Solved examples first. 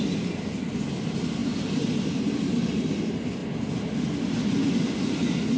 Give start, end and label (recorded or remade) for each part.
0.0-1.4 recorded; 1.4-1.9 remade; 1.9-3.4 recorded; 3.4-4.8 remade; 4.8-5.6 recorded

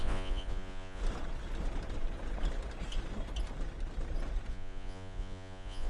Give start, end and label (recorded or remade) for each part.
0.0-1.0 remade; 1.0-4.5 recorded; 4.5-5.9 remade

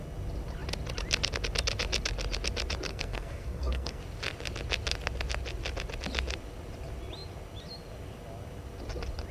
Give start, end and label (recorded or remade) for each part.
0.0-2.9 recorded; 2.9-4.0 remade; 4.0-9.3 recorded

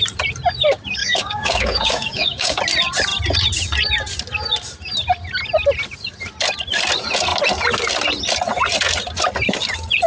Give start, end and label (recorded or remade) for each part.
0.0-1.0 recorded; 1.0-2.6 remade; 2.6-10.1 recorded